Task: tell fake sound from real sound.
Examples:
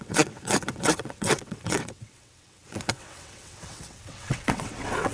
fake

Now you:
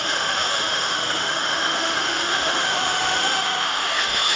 fake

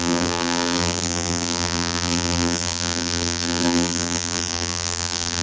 fake